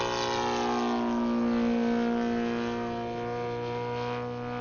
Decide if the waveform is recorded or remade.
recorded